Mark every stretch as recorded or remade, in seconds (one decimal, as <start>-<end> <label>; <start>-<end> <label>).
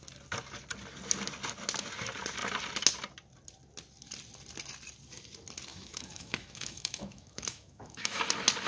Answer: 0.0-5.7 recorded; 5.7-8.2 remade; 8.2-8.7 recorded